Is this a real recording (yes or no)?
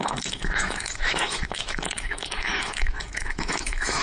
no